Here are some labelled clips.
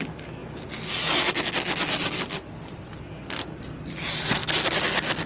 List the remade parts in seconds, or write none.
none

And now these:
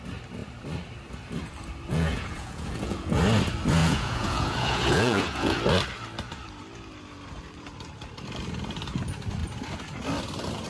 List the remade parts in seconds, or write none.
1.9-3.2 (vocoder, Vocos); 3.8-5.6

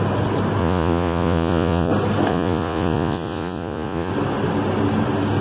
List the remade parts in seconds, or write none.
0.6-1.9 (vocoder, Vocos); 2.3-4.1

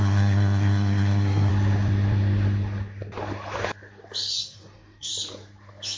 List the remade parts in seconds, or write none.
0.0-1.5 (codec, SNAC); 4.3-5.1